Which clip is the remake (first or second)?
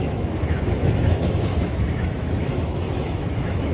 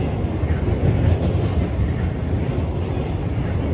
first